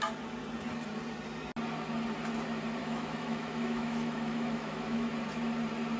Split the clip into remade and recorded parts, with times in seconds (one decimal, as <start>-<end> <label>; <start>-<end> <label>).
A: 0.0-2.8 recorded; 2.8-5.1 remade; 5.1-6.0 recorded